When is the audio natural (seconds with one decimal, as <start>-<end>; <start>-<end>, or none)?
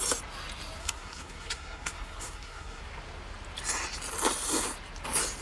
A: 0.0-0.8; 2.8-5.4